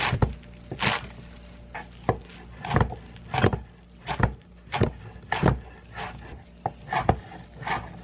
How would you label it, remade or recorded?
recorded